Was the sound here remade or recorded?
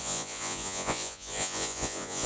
remade